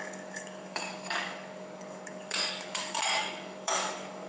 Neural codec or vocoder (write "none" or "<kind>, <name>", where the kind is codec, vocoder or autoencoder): codec, DAC